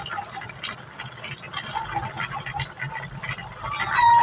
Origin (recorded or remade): recorded